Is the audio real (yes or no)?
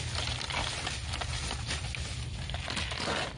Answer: yes